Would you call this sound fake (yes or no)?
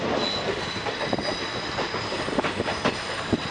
no